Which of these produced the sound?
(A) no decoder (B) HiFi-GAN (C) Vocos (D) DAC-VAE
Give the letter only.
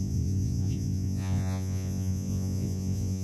C